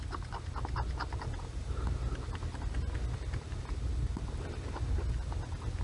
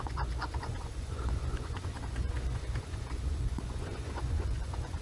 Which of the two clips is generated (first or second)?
second